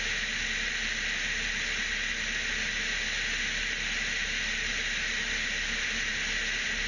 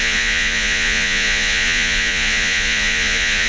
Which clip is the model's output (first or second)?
second